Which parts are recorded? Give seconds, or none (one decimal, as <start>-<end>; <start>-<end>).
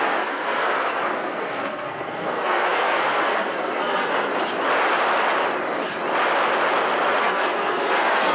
4.3-7.2